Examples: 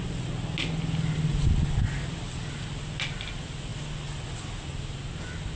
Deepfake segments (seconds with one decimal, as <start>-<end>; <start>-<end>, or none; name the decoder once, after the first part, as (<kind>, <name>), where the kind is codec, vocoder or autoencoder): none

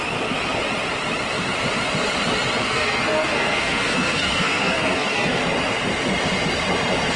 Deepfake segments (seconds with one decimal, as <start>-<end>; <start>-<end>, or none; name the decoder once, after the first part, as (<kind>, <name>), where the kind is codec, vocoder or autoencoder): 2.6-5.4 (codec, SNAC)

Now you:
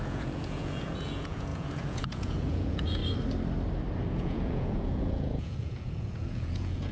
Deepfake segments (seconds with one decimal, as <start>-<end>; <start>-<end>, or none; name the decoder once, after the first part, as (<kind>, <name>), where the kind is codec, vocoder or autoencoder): 0.0-3.0 (vocoder, Vocos); 4.1-6.9

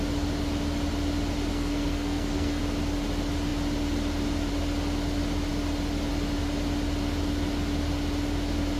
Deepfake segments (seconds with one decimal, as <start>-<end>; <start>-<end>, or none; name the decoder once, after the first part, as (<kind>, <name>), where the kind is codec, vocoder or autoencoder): 1.5-2.6 (codec, SNAC)

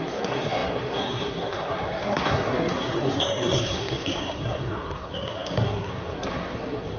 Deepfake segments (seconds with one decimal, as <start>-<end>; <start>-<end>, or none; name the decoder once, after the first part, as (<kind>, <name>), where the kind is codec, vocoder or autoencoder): 0.0-7.0 (codec, SNAC)

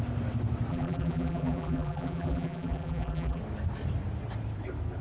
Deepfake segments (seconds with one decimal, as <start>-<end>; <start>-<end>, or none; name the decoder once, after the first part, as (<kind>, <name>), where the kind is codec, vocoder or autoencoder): 0.7-3.4 (vocoder, BigVGAN v2)

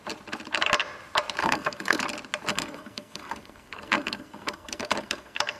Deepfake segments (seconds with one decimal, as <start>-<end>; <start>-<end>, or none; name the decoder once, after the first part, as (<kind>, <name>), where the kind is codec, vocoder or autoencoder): 1.4-2.0 (codec, SNAC); 2.5-5.6

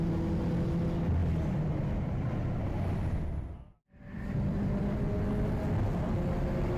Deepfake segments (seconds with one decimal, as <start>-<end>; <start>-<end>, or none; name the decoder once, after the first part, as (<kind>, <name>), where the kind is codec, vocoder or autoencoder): 1.2-5.1 (vocoder, BigVGAN v2)